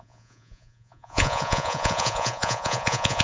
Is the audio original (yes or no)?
no